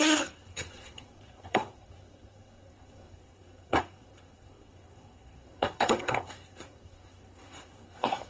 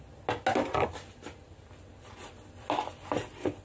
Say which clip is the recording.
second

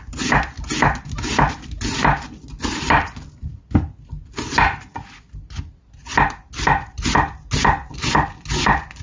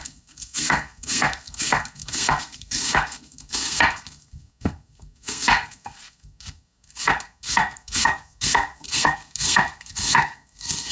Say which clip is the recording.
first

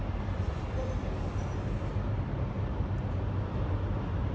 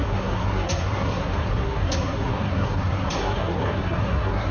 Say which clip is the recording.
first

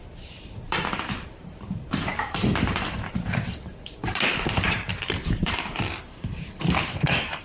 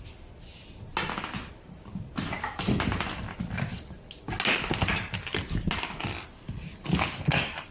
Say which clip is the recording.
second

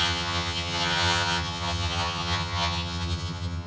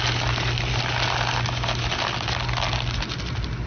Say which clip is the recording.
second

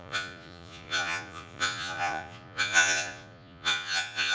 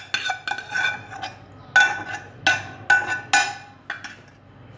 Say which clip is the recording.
second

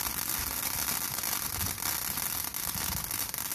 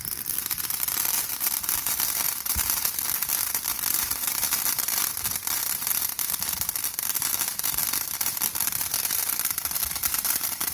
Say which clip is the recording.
first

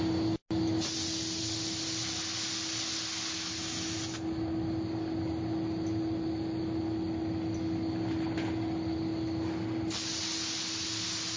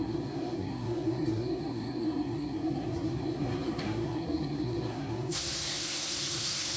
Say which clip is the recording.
first